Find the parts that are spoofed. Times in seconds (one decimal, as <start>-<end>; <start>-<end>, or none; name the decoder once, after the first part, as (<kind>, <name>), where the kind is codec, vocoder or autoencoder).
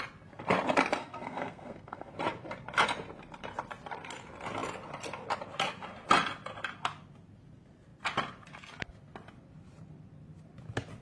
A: 1.0-2.1 (codec, SNAC)